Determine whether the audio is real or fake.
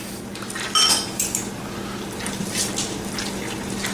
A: real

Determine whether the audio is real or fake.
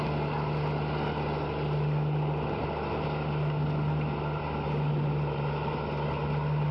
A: real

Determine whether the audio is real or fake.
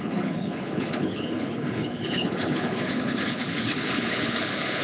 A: fake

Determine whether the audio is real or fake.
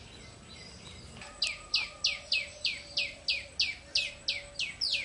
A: real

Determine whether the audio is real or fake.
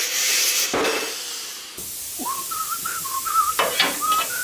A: fake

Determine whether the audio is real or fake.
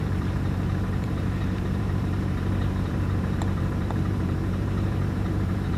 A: fake